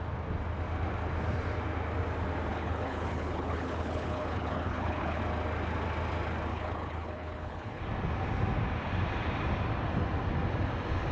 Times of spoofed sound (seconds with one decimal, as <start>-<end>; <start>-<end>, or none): 2.5-5.2; 6.5-7.8